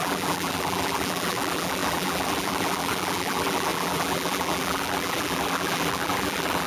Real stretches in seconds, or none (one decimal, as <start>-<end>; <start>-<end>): none